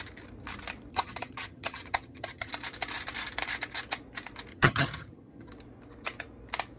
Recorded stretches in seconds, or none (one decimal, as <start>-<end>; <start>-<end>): 0.0-0.9; 2.5-4.5; 5.5-6.8